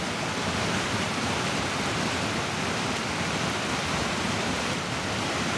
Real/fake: real